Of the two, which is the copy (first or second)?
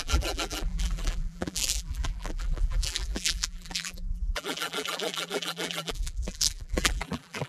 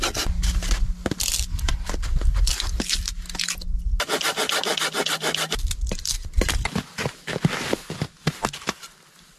first